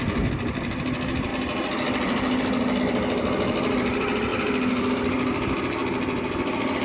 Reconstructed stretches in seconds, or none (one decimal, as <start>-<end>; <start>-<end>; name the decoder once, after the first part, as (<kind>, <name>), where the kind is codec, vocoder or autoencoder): 4.3-4.9 (vocoder, BigVGAN v2)

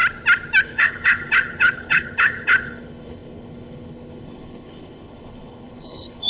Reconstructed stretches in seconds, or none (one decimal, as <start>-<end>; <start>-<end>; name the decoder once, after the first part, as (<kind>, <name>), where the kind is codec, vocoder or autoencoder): 0.6-6.3 (codec, HILCodec)

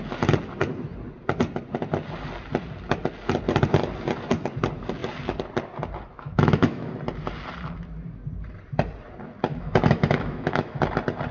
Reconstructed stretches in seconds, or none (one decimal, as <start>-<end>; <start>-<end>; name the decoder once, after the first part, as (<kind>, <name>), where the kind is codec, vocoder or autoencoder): 6.1-6.9 (autoencoder, DAC-VAE); 9.5-10.8

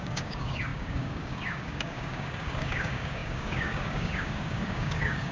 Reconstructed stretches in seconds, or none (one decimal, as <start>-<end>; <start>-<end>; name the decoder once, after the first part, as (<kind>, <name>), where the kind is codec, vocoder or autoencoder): 0.0-5.3 (codec, DAC)

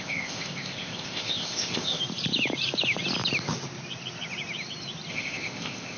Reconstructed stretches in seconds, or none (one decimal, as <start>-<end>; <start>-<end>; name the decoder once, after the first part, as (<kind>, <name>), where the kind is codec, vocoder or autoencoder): 0.0-2.0 (codec, ZipCodec); 5.1-6.0

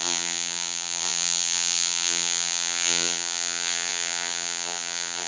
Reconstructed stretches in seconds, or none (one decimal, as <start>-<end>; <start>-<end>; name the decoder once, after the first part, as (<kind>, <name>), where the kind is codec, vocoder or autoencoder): 0.0-5.3 (vocoder, BigVGAN v2)

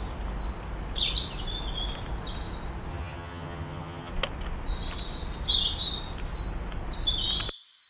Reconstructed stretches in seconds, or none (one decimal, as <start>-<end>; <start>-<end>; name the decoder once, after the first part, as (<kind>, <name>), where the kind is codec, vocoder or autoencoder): 2.9-4.1 (vocoder, HiFi-GAN)